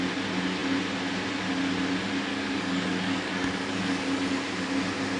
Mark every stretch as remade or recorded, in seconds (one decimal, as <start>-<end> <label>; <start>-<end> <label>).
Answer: 0.0-2.3 recorded; 2.3-4.0 remade; 4.0-5.2 recorded